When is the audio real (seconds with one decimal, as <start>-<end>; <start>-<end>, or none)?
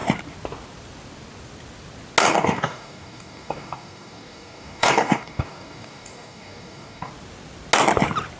0.0-2.2; 7.1-8.4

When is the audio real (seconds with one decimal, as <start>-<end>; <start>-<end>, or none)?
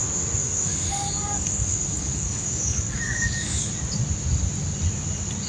0.0-0.4; 3.7-5.5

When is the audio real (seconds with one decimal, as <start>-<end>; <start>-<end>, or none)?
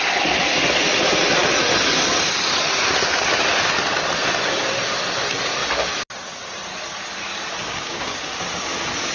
0.0-7.6; 8.4-9.1